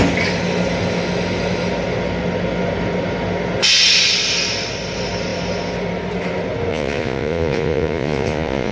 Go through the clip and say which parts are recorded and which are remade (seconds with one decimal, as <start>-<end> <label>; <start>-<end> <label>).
0.0-6.7 recorded; 6.7-8.7 remade